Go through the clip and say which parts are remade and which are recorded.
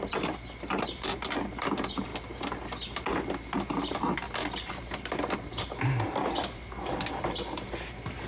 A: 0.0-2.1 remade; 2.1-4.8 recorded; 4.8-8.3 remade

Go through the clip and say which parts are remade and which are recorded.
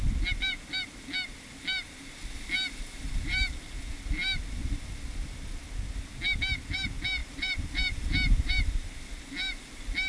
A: 0.0-2.9 recorded; 2.9-3.8 remade; 3.8-7.2 recorded; 7.2-8.6 remade; 8.6-10.1 recorded